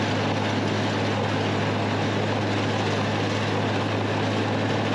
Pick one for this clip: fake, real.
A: real